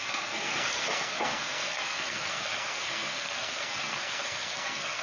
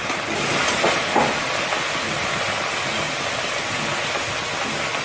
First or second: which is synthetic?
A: first